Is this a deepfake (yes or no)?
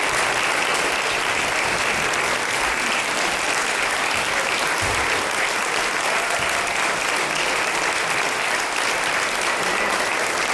no